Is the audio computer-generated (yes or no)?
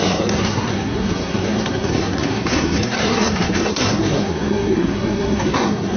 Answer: yes